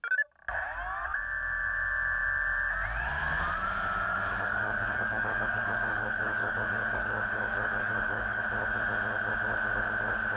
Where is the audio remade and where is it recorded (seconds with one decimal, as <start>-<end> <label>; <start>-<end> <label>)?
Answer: 0.0-4.1 recorded; 4.1-8.4 remade; 8.4-10.4 recorded